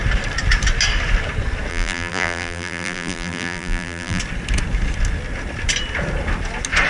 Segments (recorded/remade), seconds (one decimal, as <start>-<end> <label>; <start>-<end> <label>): 0.0-1.7 recorded; 1.7-4.2 remade; 4.2-6.9 recorded